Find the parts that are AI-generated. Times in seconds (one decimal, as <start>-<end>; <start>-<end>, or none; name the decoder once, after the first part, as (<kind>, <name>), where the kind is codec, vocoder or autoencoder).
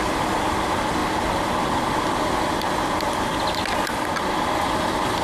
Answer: none